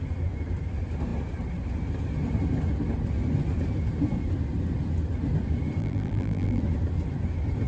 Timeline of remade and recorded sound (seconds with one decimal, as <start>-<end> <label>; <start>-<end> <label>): 0.0-5.8 recorded; 5.8-6.6 remade; 6.6-7.7 recorded